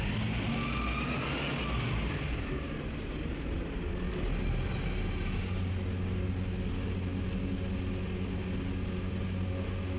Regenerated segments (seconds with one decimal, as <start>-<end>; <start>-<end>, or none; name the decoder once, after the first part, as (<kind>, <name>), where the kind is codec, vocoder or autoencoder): none